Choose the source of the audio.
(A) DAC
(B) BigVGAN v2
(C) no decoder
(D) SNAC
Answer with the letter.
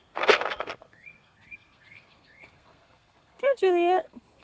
D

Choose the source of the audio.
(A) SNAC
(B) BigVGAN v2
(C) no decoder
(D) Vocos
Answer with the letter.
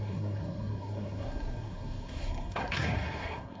A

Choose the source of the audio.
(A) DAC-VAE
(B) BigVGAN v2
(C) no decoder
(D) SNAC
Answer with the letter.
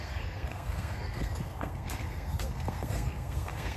D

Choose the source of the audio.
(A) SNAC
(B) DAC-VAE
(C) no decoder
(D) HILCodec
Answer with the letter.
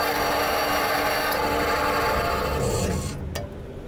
C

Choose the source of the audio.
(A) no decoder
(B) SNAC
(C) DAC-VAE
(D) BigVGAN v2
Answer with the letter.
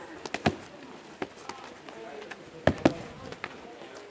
A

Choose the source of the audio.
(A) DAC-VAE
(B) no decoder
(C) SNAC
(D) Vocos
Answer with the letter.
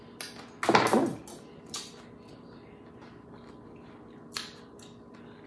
B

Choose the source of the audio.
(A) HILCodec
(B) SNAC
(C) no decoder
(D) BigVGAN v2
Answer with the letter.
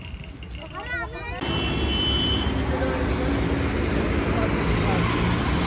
C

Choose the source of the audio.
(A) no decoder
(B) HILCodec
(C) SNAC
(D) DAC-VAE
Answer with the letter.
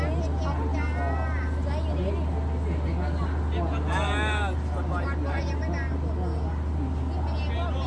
A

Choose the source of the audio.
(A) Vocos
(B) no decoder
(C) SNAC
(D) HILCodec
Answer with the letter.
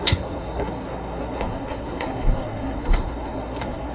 C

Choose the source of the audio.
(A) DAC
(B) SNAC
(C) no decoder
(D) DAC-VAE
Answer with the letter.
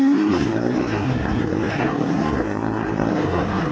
B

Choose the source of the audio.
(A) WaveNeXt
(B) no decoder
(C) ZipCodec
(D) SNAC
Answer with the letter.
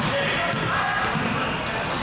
B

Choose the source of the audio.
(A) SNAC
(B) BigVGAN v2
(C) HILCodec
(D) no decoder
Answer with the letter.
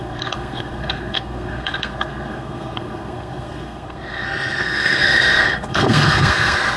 A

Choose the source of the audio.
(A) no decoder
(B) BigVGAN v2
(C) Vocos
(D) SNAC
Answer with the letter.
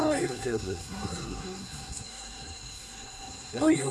D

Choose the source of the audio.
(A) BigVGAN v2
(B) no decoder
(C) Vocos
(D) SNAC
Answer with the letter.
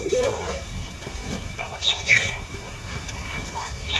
D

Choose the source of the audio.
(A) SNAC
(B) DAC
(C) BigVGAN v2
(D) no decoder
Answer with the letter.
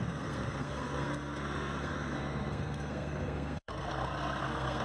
A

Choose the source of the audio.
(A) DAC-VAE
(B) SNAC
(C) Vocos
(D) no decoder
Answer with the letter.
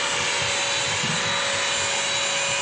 D